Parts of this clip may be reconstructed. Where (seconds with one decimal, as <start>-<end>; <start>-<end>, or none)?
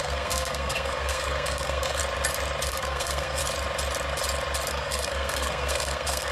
0.0-2.0; 2.7-3.4; 4.7-6.3